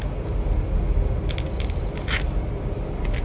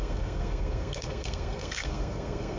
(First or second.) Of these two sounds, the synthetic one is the second